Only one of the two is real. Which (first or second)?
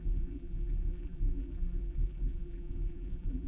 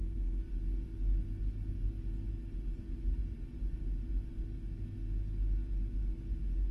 second